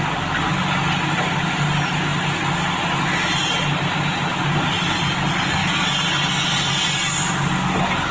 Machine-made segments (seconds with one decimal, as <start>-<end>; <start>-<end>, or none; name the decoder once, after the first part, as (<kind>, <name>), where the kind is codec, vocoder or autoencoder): none